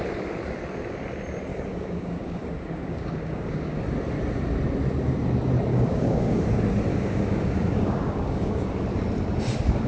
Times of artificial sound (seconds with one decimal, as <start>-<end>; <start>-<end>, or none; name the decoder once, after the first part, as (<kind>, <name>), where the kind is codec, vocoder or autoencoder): 1.5-3.8 (codec, DAC); 5.7-6.4; 6.9-8.7